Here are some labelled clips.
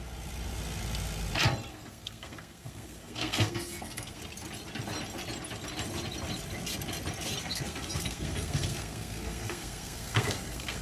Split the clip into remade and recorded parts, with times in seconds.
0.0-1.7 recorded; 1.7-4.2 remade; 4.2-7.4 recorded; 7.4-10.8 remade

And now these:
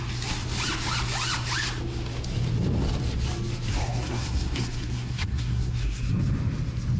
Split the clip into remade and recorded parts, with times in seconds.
0.0-3.7 recorded; 3.7-6.0 remade; 6.0-7.0 recorded

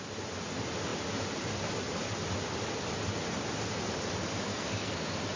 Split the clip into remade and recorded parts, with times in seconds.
0.0-4.5 recorded; 4.5-5.0 remade; 5.0-5.4 recorded

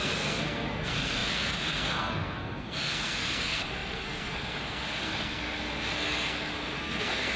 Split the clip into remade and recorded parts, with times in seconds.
0.0-7.4 remade

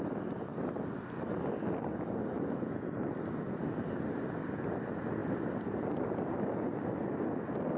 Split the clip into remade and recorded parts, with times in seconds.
0.0-7.8 recorded

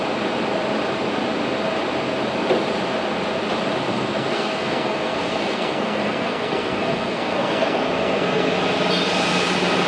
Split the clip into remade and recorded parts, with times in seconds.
0.0-3.9 recorded; 3.9-8.5 remade; 8.5-9.9 recorded